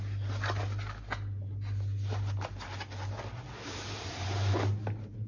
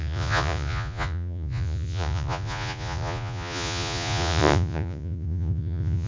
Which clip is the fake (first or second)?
second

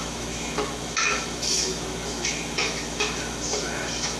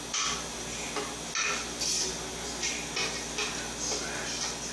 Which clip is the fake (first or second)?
first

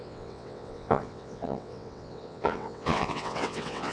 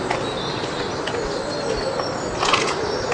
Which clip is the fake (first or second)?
first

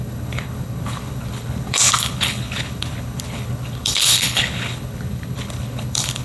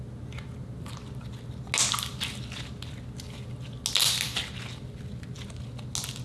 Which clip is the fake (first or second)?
first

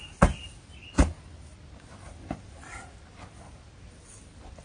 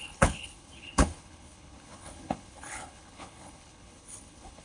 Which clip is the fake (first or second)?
second